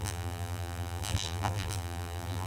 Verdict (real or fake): fake